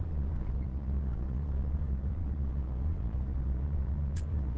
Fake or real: fake